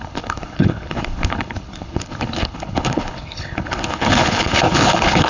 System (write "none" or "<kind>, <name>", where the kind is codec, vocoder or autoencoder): codec, HILCodec